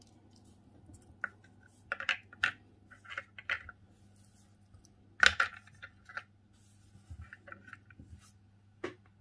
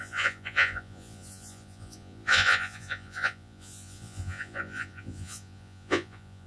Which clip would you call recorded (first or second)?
first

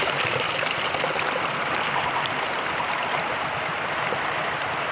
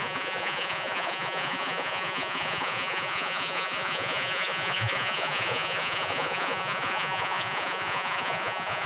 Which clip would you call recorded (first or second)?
first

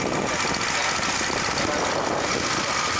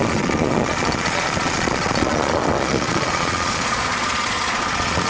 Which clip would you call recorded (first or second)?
first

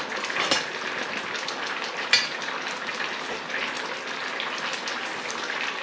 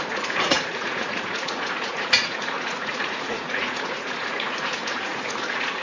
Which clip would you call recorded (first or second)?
first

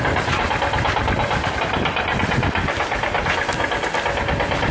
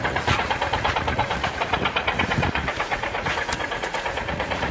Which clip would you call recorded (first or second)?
first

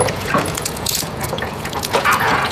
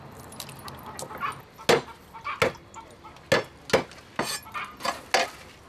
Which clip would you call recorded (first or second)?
second